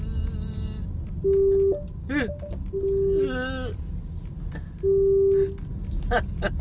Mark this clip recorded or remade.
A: recorded